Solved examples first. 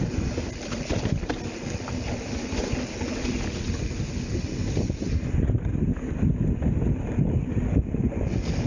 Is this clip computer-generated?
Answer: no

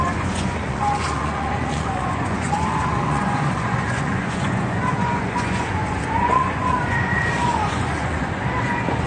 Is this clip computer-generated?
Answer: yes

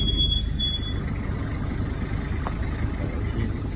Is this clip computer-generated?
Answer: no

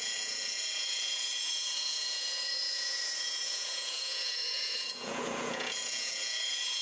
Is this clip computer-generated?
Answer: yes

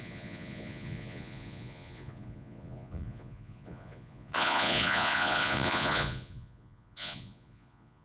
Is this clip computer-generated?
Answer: yes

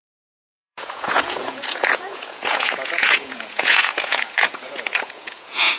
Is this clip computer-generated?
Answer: yes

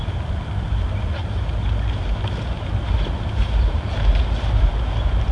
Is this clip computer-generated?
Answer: no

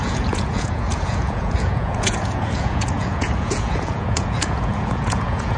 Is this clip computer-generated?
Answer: yes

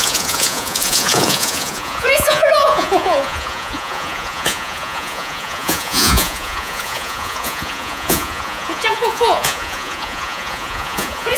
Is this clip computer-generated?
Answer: yes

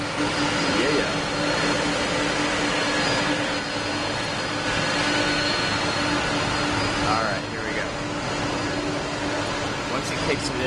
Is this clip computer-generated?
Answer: no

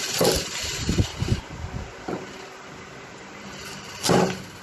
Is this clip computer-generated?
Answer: no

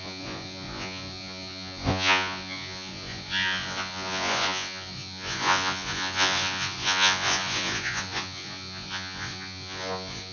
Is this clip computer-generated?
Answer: yes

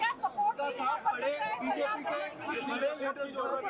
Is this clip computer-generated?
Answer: no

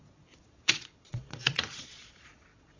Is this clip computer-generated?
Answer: yes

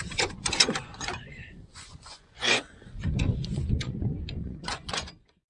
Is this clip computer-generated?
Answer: yes